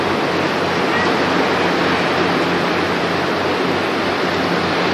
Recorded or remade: recorded